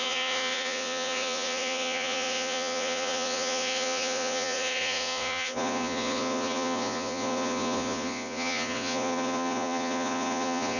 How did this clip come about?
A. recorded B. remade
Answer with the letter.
B